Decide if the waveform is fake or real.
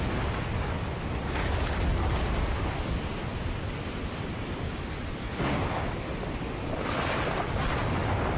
real